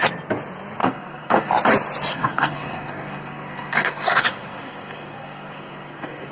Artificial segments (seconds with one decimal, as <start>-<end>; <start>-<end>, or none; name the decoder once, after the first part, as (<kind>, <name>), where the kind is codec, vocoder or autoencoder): 0.8-1.5 (codec, SNAC); 2.1-6.3

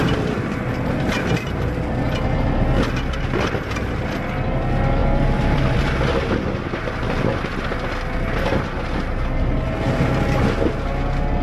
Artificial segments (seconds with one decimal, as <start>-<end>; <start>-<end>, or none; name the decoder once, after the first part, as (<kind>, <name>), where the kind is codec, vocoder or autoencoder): 5.0-5.8 (vocoder, BigVGAN v2)